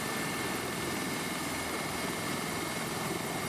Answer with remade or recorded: remade